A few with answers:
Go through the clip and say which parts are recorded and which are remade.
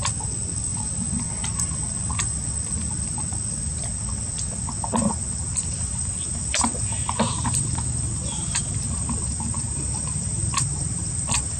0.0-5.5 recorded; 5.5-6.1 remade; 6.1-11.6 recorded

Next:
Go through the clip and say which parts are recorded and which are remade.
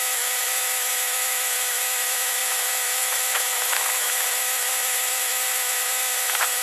0.0-6.6 remade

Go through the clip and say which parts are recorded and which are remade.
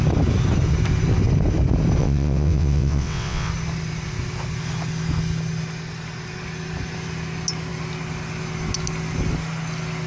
0.0-2.0 recorded; 2.0-3.5 remade; 3.5-10.1 recorded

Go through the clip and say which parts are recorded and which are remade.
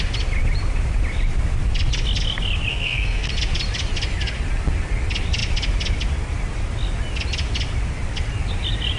0.0-2.7 recorded; 2.7-3.3 remade; 3.3-9.0 recorded